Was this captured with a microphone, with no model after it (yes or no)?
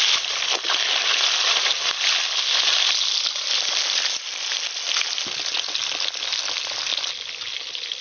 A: yes